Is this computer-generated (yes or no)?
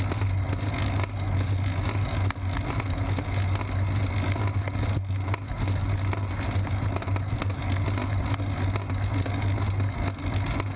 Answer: no